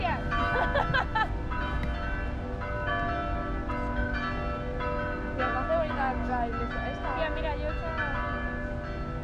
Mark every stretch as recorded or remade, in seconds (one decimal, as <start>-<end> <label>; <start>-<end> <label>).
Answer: 0.0-9.2 recorded